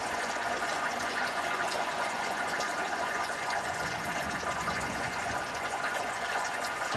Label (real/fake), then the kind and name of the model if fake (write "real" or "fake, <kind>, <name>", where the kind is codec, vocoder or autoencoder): fake, vocoder, Vocos